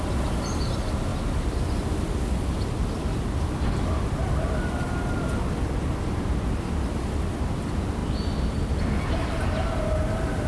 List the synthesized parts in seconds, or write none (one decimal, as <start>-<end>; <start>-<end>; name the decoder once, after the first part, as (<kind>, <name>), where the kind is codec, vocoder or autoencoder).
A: none